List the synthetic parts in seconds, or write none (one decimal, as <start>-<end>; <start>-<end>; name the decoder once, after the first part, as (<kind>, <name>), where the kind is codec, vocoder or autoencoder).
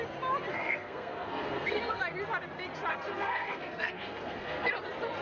0.5-2.0 (codec, SNAC); 2.9-4.7